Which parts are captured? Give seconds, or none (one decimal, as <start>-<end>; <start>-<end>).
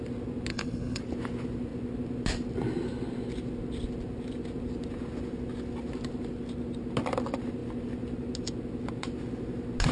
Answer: 0.0-0.5; 1.0-9.9